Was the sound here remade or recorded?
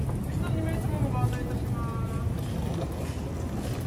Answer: recorded